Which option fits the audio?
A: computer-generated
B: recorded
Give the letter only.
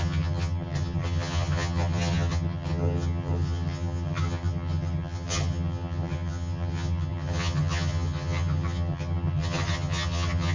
A